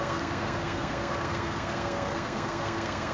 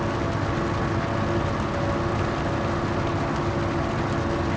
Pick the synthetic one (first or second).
first